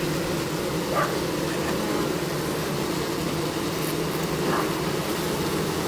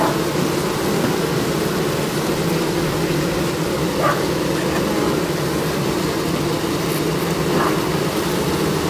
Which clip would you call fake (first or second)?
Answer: second